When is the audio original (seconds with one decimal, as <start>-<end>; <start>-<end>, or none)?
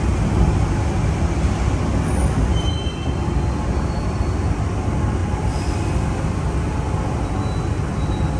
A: 0.0-5.2; 6.0-8.4